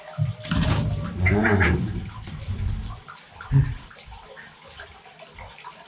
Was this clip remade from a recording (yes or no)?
yes